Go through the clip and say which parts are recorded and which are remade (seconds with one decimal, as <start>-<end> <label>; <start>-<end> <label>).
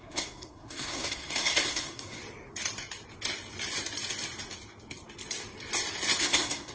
0.0-2.2 remade; 2.2-6.2 recorded; 6.2-6.7 remade